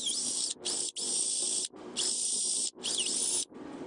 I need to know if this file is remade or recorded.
recorded